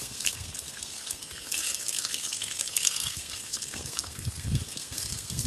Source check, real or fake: fake